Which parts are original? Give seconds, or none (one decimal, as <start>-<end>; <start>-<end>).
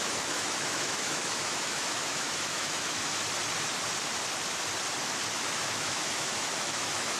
3.2-5.3